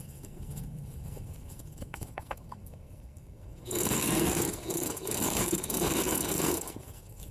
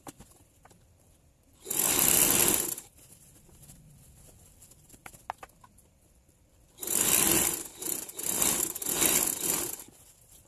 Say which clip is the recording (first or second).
second